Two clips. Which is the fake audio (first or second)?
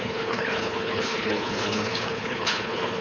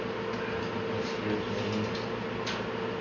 first